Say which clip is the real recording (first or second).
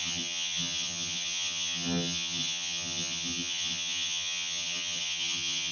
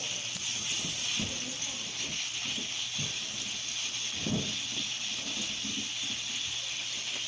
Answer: second